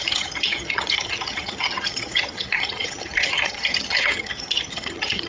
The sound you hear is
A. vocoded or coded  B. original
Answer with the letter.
A